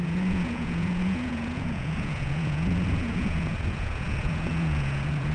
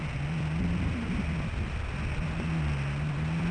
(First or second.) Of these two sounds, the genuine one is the second